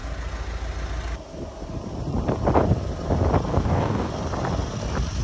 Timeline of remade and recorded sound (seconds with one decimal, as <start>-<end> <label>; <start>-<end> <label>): 0.0-3.5 recorded; 3.5-4.1 remade; 4.1-5.2 recorded